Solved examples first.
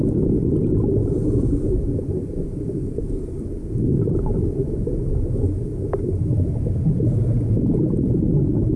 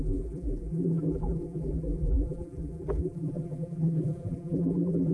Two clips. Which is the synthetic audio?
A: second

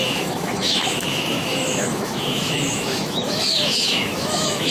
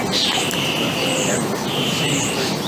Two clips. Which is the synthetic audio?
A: first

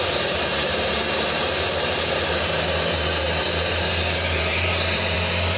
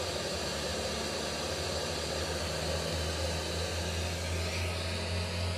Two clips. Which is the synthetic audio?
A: first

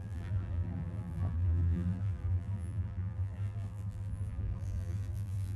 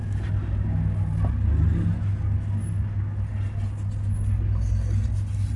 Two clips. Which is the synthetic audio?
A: first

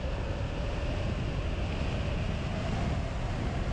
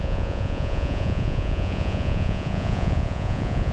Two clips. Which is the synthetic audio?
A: second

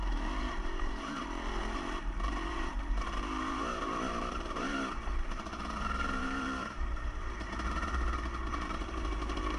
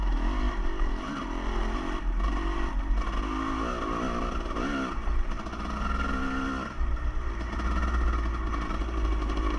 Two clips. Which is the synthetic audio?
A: first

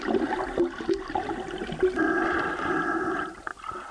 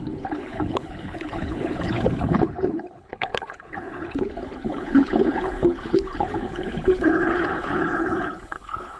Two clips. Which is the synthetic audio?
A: second